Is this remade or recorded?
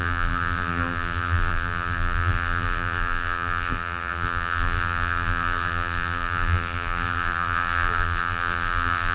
remade